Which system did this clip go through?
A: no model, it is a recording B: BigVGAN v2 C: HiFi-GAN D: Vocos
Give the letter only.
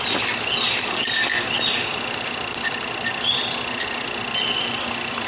A